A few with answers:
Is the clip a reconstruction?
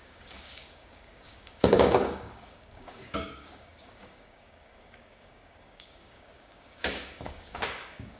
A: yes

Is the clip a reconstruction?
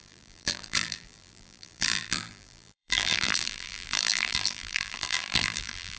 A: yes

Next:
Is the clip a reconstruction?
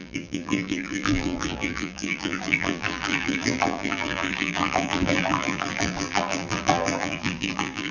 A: yes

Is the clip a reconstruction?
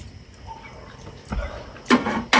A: no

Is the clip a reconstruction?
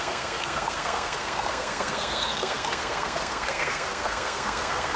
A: yes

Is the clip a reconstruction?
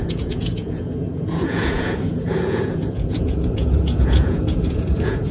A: yes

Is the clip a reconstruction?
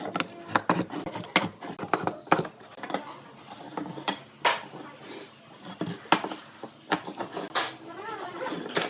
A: no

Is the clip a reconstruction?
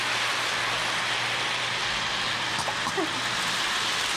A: no